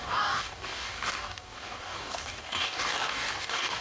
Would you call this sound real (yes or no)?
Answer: no